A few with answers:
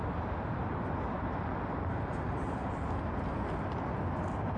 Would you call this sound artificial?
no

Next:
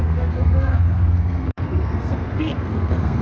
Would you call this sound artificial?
yes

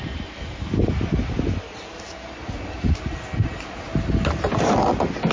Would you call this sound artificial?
no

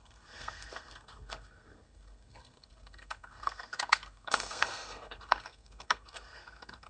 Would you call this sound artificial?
yes